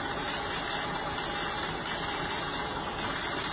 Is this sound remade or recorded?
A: recorded